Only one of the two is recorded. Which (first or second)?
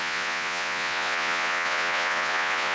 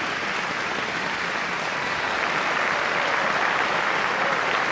second